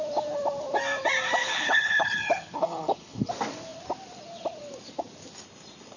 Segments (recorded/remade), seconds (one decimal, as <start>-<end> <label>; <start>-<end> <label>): 0.0-1.4 recorded; 1.4-3.3 remade; 3.3-6.0 recorded